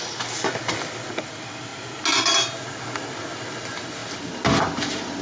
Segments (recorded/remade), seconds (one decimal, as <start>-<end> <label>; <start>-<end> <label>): 0.0-5.2 recorded